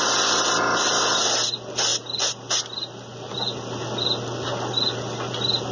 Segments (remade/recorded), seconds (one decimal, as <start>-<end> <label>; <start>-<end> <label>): 0.0-5.7 recorded